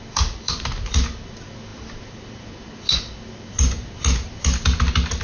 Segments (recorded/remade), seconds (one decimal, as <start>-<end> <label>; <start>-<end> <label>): 0.0-5.2 recorded